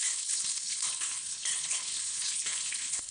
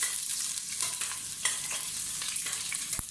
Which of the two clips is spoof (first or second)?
first